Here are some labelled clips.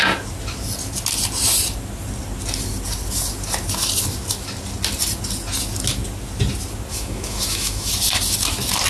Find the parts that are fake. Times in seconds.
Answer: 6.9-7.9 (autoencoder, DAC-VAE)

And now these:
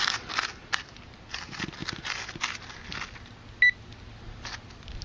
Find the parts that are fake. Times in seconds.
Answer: 0.6-1.2 (vocoder, BigVGAN v2)

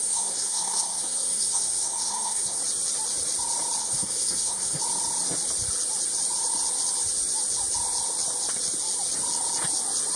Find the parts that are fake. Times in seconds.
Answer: 0.0-2.6 (codec, SNAC); 3.8-4.8

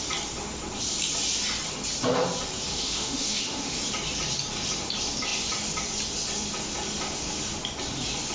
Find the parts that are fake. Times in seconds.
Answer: 2.7-3.8 (autoencoder, DAC-VAE)